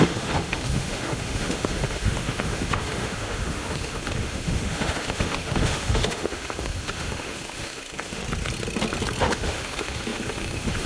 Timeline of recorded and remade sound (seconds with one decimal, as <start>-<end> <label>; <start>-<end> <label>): 0.0-8.2 remade; 8.2-9.2 recorded; 9.2-10.9 remade

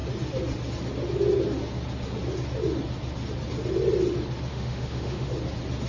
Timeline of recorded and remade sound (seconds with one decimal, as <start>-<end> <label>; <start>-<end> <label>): 0.0-4.5 recorded; 4.5-5.3 remade; 5.3-5.9 recorded